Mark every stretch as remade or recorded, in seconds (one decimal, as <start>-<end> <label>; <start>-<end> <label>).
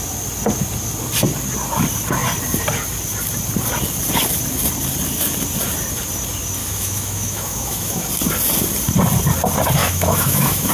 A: 0.0-6.6 recorded; 6.6-8.1 remade; 8.1-9.8 recorded; 9.8-10.7 remade